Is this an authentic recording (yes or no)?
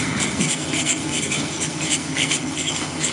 no